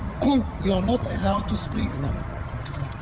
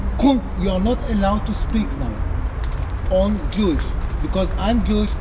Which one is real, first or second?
second